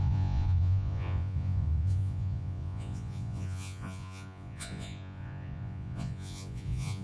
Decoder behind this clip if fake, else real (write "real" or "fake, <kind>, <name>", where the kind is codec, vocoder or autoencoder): fake, vocoder, Vocos